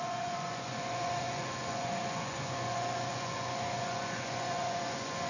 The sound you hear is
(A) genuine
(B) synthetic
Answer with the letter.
B